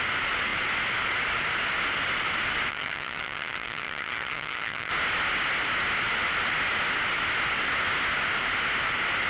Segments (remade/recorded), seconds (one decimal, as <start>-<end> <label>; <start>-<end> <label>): 0.0-2.7 recorded; 2.7-4.9 remade; 4.9-9.3 recorded